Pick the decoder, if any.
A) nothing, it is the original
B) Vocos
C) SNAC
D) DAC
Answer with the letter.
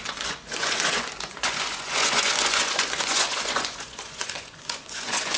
B